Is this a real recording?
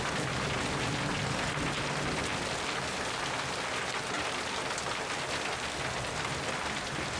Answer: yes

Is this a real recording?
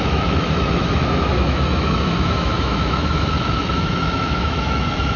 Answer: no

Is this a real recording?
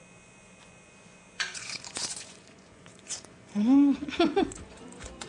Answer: no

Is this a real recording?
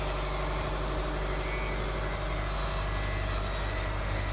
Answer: yes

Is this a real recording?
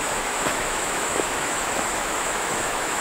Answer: no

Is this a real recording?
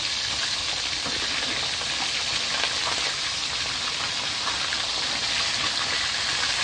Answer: yes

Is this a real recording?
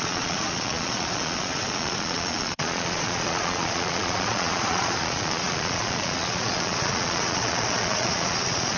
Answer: no